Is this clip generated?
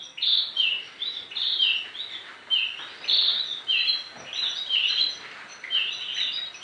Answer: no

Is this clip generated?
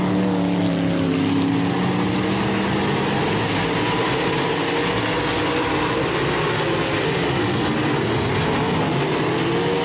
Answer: no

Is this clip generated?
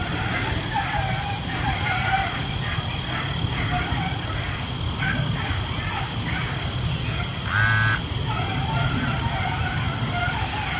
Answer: no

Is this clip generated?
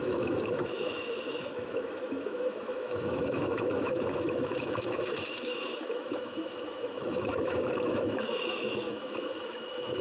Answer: yes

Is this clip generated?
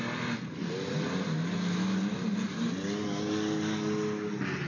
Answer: no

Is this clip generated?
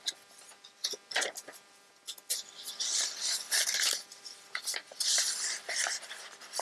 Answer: no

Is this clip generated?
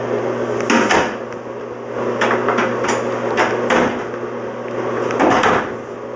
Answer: no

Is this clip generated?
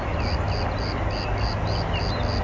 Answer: no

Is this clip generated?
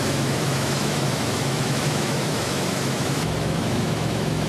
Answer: yes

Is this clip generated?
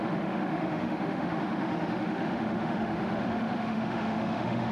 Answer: yes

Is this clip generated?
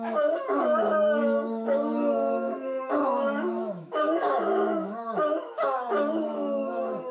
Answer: yes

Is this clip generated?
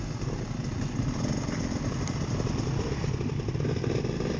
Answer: no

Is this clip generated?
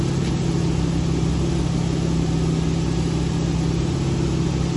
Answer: no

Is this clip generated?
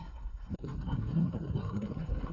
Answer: yes